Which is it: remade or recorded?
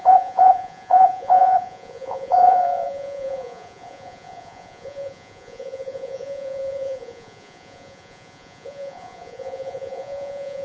remade